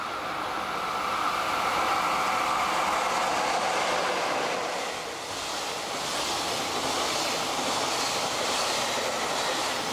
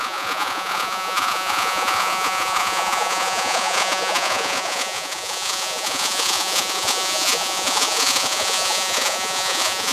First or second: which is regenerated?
second